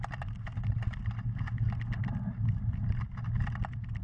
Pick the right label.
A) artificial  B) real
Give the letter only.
B